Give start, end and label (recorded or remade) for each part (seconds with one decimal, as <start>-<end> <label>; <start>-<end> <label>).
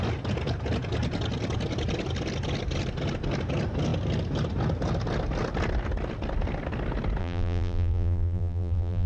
0.0-7.2 recorded; 7.2-9.1 remade